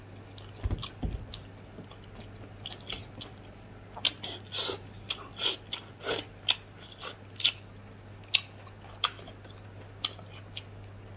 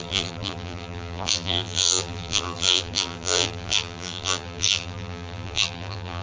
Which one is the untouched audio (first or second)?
first